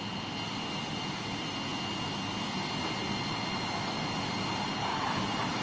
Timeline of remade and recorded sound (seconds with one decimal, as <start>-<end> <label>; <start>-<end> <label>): 0.0-4.9 recorded; 4.9-5.6 remade